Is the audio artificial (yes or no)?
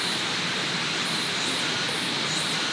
no